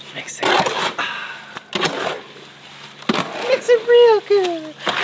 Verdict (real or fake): real